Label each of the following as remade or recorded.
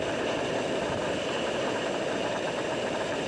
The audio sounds remade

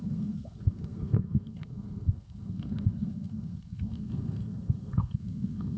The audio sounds remade